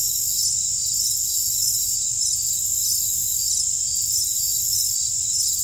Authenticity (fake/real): real